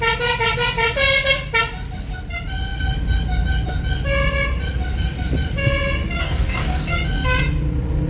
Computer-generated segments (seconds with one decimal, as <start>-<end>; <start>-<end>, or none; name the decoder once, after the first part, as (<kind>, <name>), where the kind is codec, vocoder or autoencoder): 6.2-6.9 (codec, DAC)